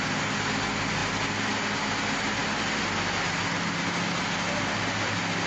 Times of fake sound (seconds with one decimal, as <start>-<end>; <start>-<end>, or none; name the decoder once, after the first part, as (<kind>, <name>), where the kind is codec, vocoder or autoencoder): none